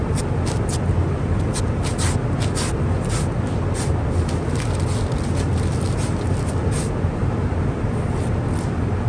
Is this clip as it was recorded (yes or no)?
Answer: yes